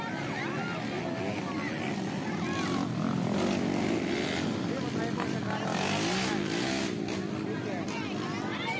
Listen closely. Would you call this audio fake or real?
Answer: real